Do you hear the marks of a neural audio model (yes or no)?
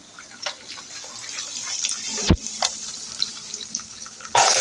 yes